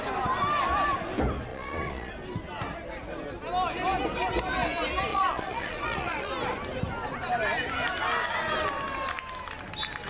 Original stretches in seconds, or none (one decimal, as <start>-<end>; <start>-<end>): 0.0-1.5; 2.1-5.1; 6.3-10.1